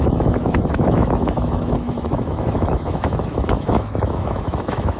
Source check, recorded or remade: remade